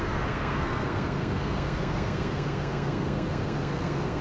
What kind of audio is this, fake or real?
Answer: fake